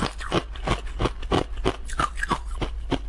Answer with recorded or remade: recorded